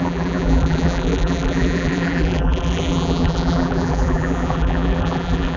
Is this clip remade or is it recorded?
remade